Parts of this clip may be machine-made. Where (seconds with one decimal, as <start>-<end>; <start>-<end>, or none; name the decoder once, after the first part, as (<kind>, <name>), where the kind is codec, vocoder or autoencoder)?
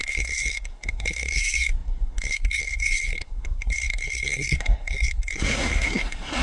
0.0-6.4 (codec, SNAC)